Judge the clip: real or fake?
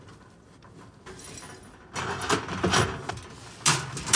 real